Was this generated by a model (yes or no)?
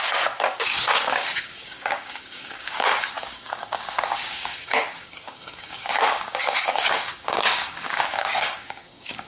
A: yes